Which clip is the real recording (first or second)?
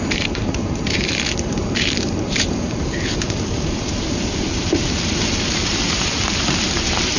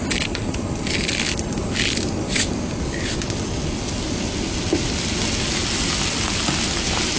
second